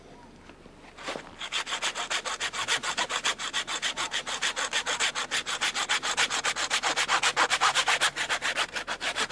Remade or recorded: recorded